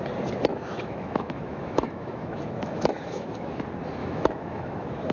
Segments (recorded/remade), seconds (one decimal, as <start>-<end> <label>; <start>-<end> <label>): 0.0-0.5 recorded; 0.5-3.6 remade; 3.6-4.0 recorded; 4.0-5.1 remade